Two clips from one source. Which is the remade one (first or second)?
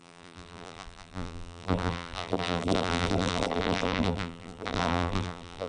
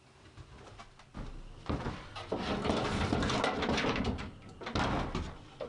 first